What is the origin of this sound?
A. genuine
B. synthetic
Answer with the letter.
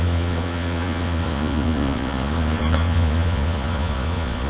B